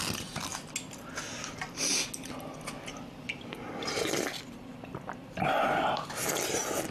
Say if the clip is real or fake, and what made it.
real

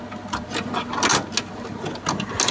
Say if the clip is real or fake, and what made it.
real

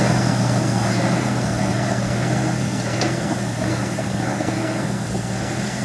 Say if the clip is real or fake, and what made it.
fake, codec, SNAC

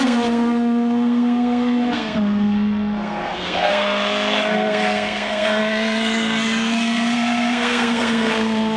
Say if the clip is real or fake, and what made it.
fake, codec, SNAC